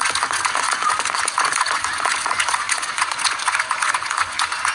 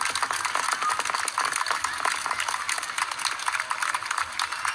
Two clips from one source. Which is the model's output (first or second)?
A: first